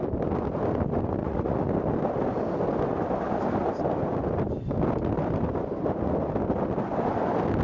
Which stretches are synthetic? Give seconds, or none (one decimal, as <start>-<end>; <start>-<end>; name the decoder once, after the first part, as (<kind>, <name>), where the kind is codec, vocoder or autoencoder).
1.2-1.7 (vocoder, Vocos)

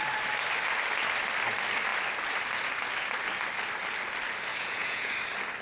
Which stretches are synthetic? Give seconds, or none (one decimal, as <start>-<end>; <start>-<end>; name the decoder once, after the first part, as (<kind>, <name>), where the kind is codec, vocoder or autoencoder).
4.5-5.1 (vocoder, Vocos)

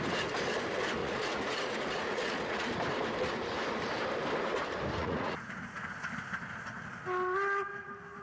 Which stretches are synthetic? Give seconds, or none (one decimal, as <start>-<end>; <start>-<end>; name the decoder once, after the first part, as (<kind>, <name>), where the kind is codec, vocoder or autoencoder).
1.0-2.7 (vocoder, Vocos); 5.0-6.0

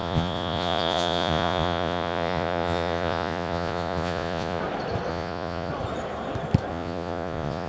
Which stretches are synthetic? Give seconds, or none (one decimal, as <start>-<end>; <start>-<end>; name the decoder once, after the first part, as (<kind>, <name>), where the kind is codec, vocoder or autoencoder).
0.0-4.6 (vocoder, Vocos); 5.1-5.7; 6.7-7.7